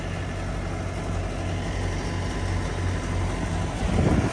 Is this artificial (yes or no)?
no